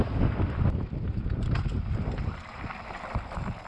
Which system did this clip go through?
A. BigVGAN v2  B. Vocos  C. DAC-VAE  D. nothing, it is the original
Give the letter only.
D